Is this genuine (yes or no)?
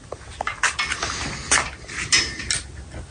yes